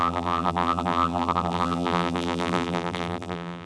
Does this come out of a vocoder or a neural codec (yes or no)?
yes